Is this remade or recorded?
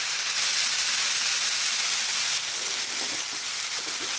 recorded